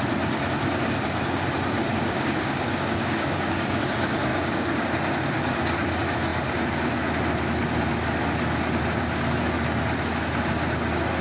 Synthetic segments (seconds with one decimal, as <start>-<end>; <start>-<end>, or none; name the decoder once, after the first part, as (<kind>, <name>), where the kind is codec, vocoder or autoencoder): 1.9-3.8 (codec, DAC); 4.3-4.9